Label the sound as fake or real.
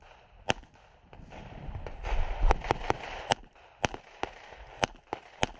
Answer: real